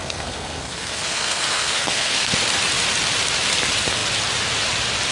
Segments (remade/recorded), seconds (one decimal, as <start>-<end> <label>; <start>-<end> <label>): 0.0-2.3 remade; 2.3-5.1 recorded